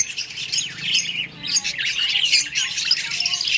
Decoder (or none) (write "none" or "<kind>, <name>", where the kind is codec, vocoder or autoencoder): none